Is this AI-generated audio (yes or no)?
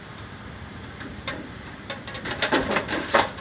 yes